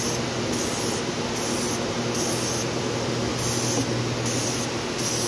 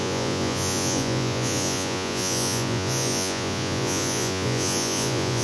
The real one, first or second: first